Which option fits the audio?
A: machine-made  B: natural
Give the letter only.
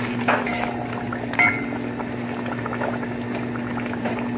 B